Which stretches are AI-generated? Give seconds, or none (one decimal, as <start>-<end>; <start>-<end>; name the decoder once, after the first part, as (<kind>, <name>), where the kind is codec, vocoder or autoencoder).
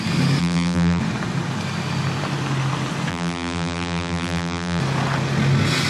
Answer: 0.4-1.0 (vocoder, BigVGAN v2); 3.1-4.8